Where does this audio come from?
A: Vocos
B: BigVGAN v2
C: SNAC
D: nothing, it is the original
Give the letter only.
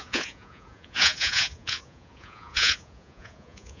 A